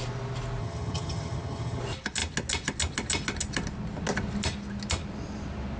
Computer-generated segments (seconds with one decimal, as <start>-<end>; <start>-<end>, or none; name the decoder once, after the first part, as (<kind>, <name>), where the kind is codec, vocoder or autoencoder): 0.6-1.8 (vocoder, HiFi-GAN)